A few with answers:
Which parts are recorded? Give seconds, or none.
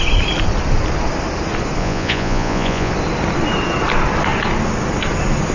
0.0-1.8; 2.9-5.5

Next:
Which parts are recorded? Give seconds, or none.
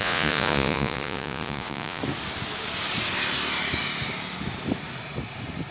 2.0-5.7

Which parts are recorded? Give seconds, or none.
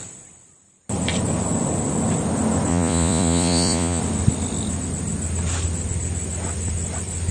0.0-2.7; 4.0-7.3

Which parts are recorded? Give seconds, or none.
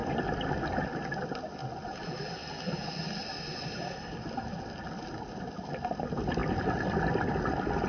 0.0-7.9